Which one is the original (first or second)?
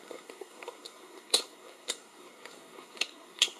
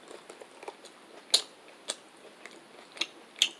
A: second